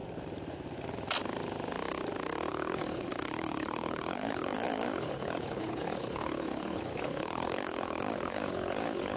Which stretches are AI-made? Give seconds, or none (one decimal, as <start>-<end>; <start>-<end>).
2.5-9.2